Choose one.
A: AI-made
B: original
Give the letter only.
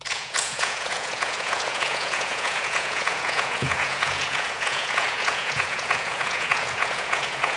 A